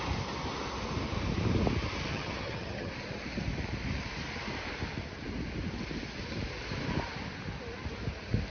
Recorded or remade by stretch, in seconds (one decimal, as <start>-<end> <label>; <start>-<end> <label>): 0.0-2.1 recorded; 2.1-2.9 remade; 2.9-8.5 recorded